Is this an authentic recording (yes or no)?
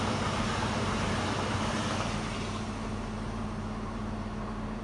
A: yes